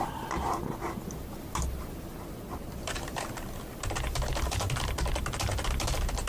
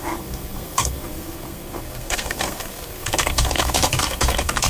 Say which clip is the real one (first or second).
first